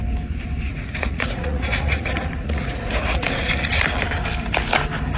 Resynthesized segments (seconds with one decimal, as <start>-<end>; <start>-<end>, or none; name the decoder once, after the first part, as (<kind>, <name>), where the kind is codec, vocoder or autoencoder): 0.7-3.8 (vocoder, Vocos)